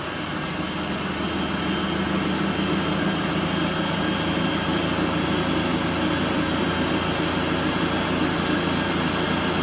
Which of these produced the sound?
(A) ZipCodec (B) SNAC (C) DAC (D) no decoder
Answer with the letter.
D